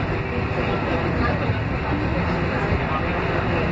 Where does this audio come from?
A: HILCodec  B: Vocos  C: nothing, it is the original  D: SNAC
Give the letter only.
C